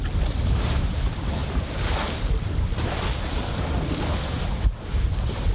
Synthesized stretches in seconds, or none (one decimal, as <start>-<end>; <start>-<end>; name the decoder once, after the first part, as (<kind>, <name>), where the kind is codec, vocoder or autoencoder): none